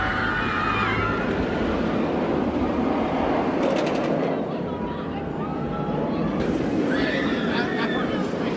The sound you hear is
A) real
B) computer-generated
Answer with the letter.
A